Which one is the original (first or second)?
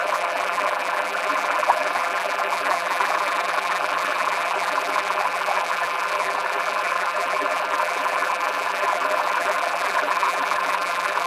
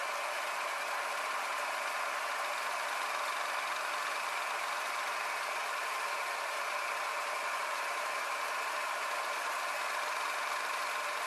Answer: second